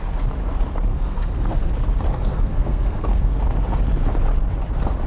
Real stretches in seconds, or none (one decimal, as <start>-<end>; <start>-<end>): 0.0-0.9; 1.7-2.1; 3.4-5.1